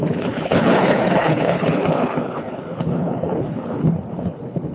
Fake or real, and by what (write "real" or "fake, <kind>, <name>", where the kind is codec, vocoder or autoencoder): fake, codec, HILCodec